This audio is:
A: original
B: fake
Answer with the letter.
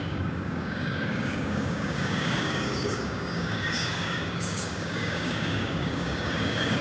B